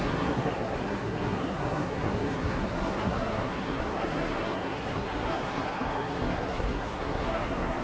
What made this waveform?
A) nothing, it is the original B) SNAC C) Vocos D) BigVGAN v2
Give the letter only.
B